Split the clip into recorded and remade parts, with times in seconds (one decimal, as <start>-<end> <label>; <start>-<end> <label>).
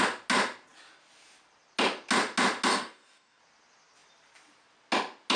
0.0-2.7 recorded; 2.7-3.4 remade; 3.4-5.4 recorded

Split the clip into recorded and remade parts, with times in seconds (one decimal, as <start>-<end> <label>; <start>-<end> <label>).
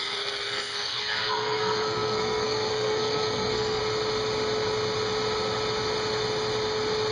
0.0-3.8 remade; 3.8-7.1 recorded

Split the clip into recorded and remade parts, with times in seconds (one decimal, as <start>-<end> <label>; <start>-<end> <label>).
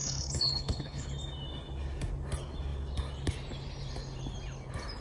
0.0-1.1 remade; 1.1-5.0 recorded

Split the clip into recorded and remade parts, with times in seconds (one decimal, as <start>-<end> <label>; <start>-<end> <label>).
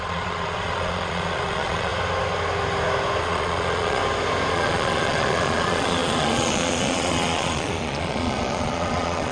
0.0-1.9 remade; 1.9-3.2 recorded; 3.2-4.0 remade; 4.0-4.5 recorded; 4.5-9.3 remade